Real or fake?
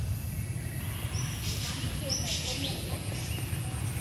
real